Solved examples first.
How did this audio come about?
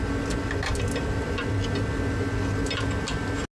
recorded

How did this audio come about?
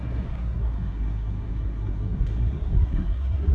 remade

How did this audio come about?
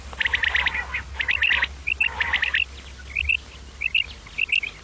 recorded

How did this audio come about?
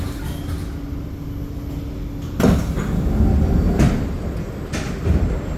recorded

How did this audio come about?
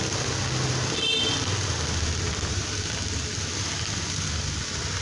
recorded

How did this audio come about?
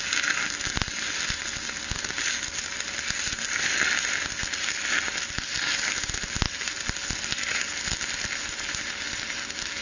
recorded